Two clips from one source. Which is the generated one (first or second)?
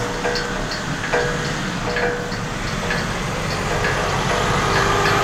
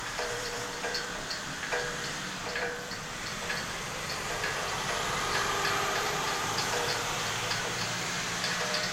second